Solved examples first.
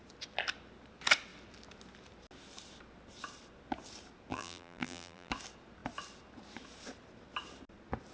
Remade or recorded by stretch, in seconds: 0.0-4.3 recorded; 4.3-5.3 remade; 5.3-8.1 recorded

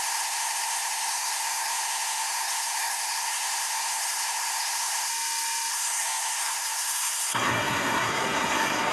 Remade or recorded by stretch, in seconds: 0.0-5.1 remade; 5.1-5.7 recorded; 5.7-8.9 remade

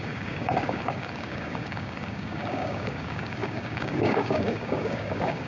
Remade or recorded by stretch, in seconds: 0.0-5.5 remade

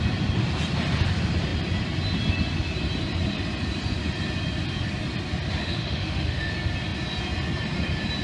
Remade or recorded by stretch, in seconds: 0.0-5.6 recorded; 5.6-6.5 remade; 6.5-8.2 recorded